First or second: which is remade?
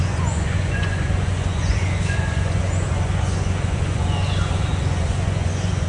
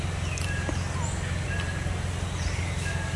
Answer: first